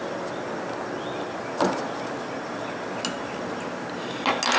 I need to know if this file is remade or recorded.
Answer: recorded